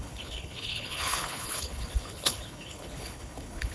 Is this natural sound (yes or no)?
no